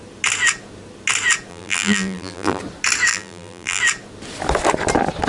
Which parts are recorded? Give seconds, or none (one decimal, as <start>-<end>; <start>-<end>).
0.0-1.5; 2.6-3.1; 3.8-5.3